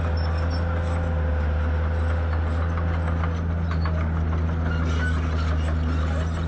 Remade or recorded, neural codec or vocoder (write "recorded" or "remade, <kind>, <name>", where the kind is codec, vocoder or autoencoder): recorded